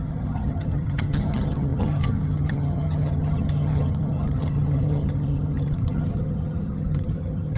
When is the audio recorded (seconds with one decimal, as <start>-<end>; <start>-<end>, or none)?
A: none

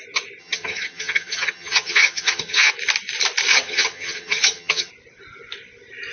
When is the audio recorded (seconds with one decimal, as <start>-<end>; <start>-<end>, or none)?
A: 0.0-0.4; 2.7-3.5; 4.9-6.1

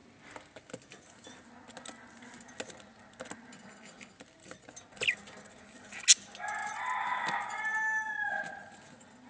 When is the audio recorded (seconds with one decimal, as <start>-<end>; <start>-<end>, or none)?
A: 0.0-9.3

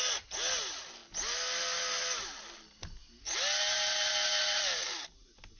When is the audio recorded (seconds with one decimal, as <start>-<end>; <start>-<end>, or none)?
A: 0.0-5.6

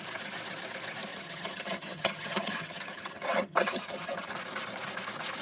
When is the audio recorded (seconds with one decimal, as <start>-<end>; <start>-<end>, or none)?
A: 0.0-1.1; 4.3-5.4

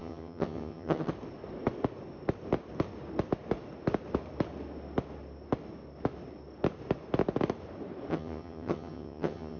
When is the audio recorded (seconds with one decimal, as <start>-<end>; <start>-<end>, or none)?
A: 1.1-8.1

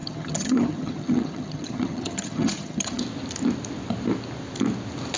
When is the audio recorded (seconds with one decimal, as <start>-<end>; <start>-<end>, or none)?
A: 3.0-5.2

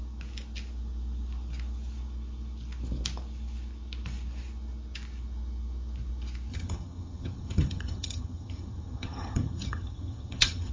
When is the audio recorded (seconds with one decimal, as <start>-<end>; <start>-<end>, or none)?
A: 0.0-6.5